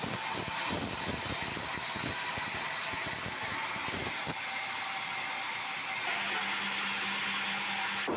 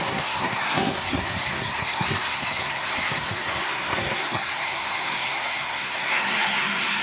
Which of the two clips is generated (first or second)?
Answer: second